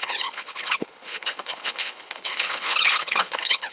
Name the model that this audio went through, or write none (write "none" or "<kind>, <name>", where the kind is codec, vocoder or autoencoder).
codec, HILCodec